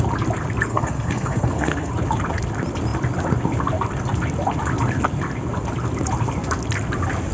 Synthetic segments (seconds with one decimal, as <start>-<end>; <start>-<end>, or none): 0.7-1.9